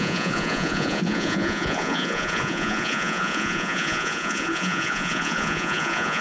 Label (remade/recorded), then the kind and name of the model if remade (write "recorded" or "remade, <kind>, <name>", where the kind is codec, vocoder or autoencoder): remade, vocoder, Vocos